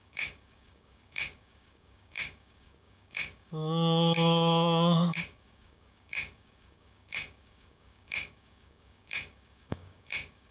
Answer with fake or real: fake